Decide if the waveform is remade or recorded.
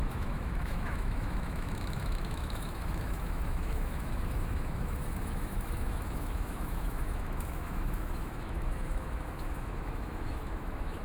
remade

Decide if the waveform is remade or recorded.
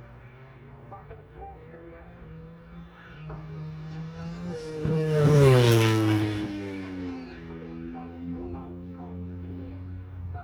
remade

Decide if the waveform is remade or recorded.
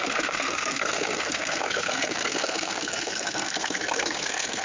remade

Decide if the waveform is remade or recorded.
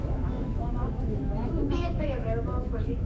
remade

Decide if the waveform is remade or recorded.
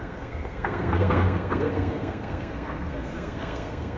remade